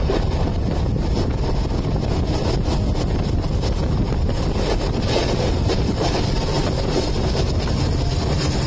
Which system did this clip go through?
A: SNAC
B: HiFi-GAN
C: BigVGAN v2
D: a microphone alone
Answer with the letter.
D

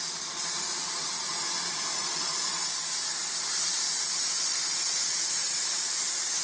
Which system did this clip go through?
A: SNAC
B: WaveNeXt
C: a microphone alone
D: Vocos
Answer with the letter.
D